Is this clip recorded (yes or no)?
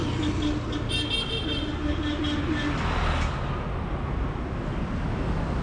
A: yes